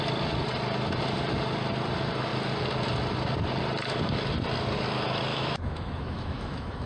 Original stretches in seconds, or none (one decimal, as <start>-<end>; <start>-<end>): 0.0-5.3